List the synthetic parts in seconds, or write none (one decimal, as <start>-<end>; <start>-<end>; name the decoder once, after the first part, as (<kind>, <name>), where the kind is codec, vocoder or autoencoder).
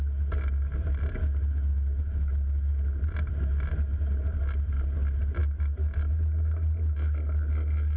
none